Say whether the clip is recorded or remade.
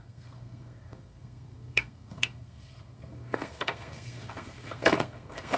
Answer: remade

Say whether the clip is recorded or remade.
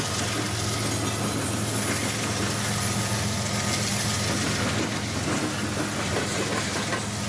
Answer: recorded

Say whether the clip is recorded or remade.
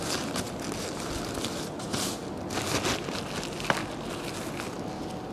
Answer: recorded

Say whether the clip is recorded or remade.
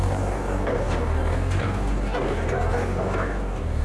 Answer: remade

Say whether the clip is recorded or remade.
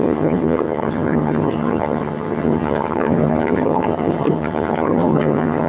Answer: remade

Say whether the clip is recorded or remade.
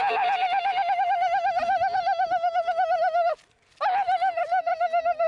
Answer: recorded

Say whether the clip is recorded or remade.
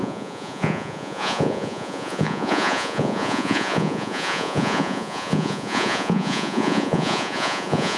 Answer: remade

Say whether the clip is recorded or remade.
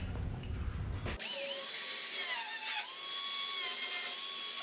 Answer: recorded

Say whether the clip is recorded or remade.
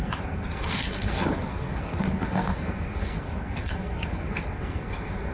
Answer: remade